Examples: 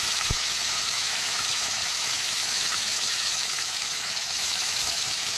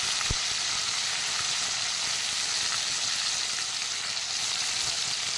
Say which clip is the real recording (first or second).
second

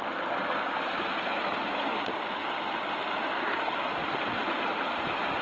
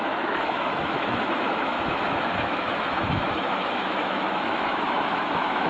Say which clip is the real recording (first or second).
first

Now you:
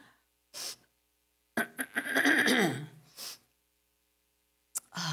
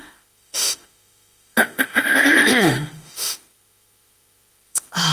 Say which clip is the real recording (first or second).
first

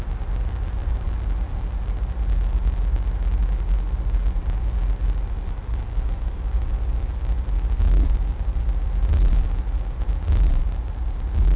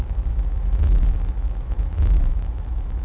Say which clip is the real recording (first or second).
first